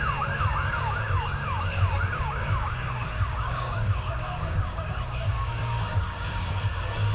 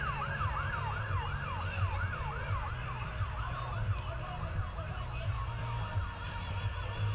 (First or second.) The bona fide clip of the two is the second